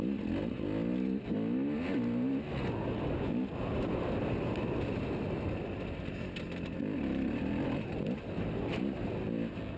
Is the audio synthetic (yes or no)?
no